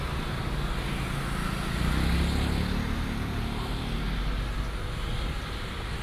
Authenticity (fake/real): real